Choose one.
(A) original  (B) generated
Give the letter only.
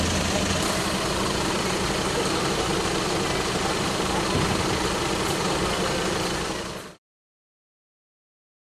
A